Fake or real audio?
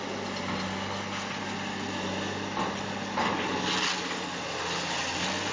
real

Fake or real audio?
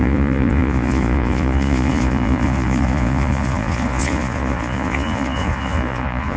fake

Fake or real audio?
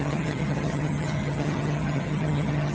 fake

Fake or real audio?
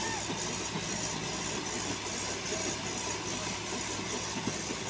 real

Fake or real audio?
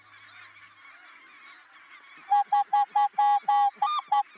real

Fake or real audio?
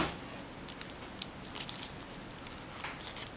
real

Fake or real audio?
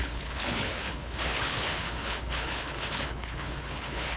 fake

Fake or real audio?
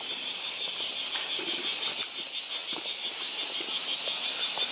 real